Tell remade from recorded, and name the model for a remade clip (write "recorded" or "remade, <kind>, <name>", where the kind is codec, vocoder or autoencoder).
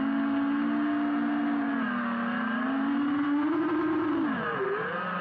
recorded